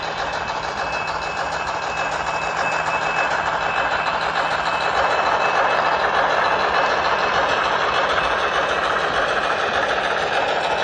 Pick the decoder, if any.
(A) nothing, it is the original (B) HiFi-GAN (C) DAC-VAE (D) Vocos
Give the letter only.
A